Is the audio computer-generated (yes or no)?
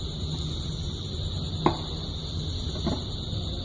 no